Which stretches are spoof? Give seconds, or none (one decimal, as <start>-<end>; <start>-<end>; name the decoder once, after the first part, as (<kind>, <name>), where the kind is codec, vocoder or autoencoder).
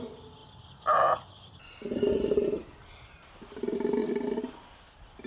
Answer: none